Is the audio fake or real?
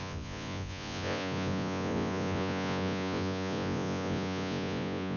fake